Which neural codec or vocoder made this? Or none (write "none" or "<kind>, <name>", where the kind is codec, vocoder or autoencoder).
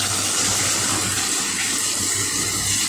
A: none